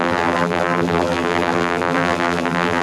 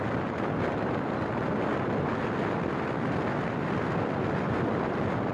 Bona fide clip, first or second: second